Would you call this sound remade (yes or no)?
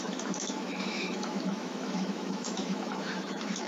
yes